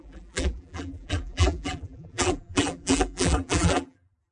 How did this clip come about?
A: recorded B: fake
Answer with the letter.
B